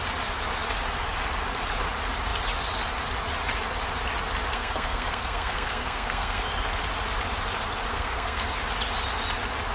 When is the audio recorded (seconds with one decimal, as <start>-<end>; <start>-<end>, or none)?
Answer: 0.0-4.5; 6.4-7.9; 8.6-9.7

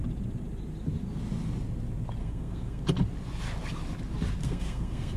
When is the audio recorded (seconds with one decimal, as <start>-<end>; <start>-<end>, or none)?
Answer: 0.0-2.2; 2.8-4.4

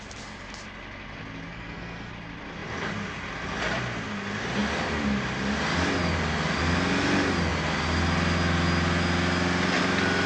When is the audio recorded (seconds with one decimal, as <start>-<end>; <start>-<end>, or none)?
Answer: 0.0-1.5; 2.1-10.3